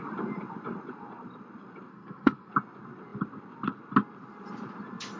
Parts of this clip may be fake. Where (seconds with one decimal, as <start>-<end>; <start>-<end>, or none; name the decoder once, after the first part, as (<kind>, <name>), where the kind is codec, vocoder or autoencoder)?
1.9-2.5 (codec, SNAC)